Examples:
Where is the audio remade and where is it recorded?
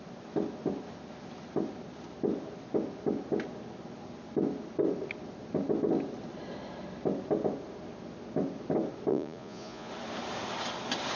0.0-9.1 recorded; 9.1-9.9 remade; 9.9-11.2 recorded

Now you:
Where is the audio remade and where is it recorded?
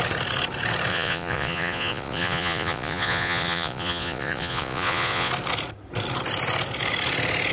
0.0-0.9 recorded; 0.9-5.3 remade; 5.3-7.5 recorded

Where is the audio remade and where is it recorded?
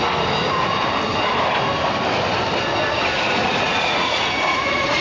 0.0-3.4 recorded; 3.4-5.0 remade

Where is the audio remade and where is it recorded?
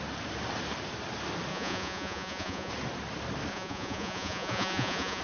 0.0-1.5 recorded; 1.5-2.7 remade; 2.7-3.5 recorded; 3.5-5.2 remade